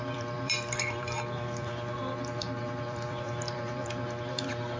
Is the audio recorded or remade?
remade